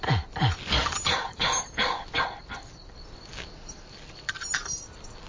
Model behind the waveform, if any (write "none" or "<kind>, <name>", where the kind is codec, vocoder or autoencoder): none